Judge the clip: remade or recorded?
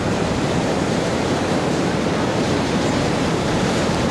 remade